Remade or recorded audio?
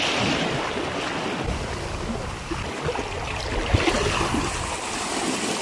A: recorded